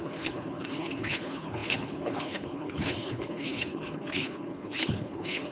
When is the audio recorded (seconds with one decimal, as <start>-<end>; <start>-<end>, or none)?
none